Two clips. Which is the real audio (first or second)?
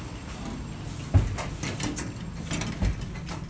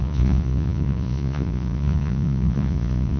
first